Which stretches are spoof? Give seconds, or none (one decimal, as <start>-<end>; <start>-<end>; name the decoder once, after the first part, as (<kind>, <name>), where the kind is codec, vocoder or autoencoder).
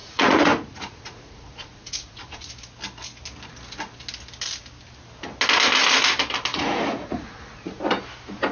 0.0-2.5 (vocoder, Vocos); 6.5-7.8